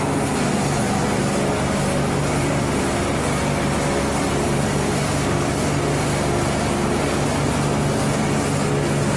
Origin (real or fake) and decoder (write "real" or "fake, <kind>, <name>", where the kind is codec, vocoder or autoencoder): real